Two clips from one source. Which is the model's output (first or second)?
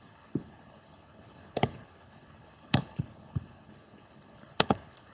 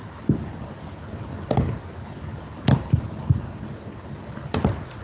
first